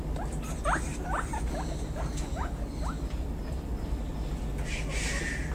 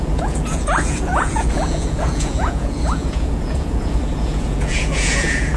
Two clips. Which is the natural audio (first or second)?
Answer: first